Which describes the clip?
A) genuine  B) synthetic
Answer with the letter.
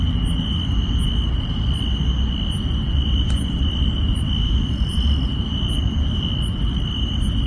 A